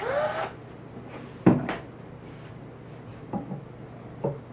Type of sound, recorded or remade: recorded